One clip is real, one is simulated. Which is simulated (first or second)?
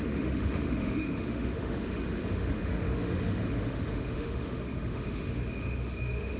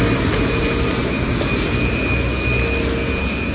first